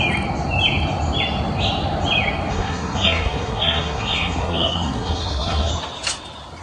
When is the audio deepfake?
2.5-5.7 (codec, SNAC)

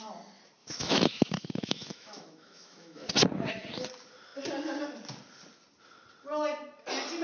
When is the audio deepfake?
0.6-3.1 (autoencoder, DAC-VAE)